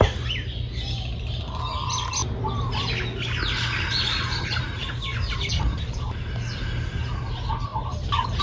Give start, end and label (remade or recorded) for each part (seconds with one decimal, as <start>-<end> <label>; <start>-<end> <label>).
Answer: 0.0-8.4 recorded